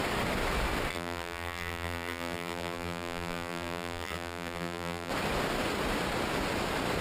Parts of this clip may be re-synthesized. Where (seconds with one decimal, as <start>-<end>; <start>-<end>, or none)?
0.9-5.1